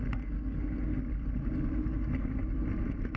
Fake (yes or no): no